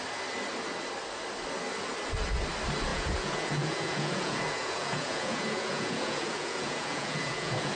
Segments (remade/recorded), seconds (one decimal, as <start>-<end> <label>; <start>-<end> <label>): 0.0-2.9 recorded; 2.9-7.8 remade